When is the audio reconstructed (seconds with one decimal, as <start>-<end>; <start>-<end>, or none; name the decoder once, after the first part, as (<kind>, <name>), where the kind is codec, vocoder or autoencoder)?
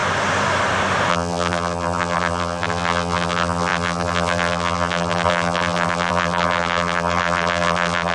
1.1-8.1 (vocoder, BigVGAN v2)